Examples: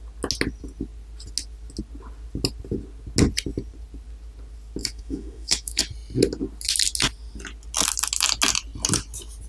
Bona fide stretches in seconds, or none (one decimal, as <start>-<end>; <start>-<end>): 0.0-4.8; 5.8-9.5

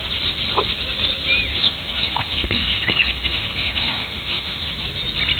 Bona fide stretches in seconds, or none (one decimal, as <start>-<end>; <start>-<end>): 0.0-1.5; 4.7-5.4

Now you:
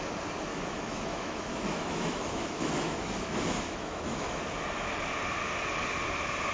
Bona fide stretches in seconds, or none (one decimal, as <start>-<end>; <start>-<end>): 0.0-0.5; 4.4-6.5

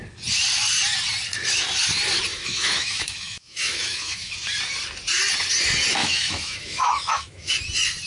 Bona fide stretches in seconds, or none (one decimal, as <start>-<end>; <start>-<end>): 0.0-2.3; 4.3-6.0; 7.5-8.1

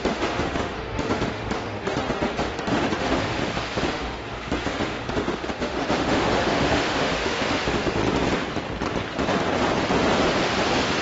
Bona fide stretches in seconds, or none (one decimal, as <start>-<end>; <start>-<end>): 3.4-3.9; 8.0-11.0